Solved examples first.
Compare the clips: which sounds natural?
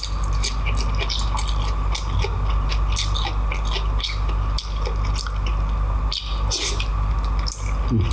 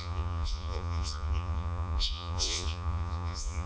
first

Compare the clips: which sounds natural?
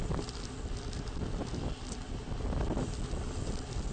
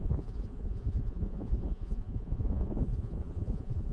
first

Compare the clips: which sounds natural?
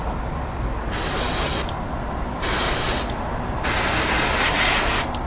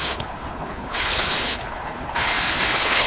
first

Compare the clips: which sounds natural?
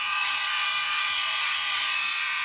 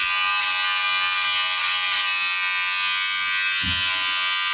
second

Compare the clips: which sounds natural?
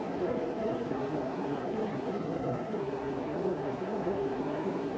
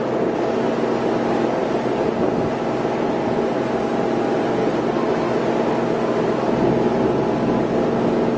second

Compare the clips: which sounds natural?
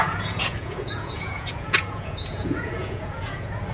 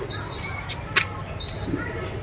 second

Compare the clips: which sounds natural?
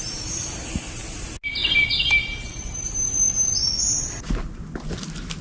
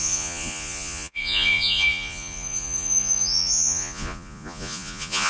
first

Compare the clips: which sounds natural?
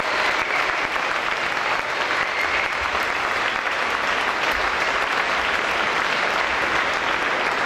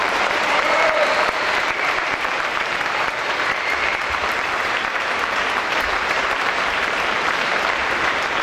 first